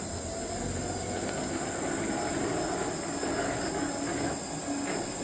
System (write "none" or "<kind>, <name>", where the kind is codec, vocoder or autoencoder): none